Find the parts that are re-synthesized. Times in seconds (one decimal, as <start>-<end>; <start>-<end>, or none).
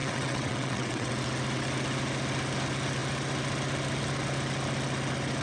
0.0-1.1